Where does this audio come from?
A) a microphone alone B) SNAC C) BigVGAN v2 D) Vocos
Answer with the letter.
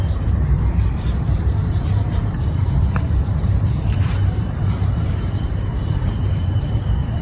C